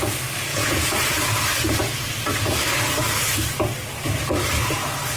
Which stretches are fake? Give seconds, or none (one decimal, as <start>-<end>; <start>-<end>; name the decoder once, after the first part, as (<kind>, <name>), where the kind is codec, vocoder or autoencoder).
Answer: 0.5-1.3 (vocoder, Vocos)